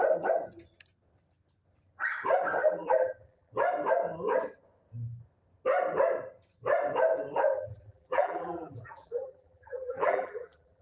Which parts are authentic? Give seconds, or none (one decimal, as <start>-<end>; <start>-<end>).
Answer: 0.0-2.6; 3.5-7.7